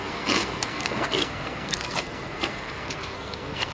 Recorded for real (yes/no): no